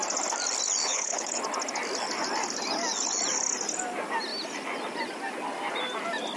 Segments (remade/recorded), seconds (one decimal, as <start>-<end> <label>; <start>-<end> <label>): 0.0-0.8 recorded; 0.8-1.4 remade; 1.4-6.4 recorded